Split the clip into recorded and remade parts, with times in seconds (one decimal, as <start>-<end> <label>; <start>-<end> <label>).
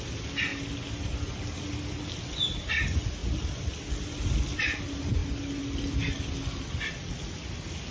0.0-7.9 recorded